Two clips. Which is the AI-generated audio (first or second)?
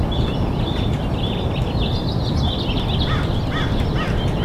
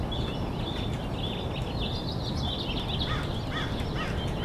first